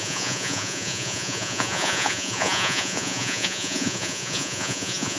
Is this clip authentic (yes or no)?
no